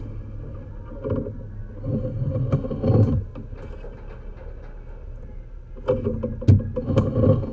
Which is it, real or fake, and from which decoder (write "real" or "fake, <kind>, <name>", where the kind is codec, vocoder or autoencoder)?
real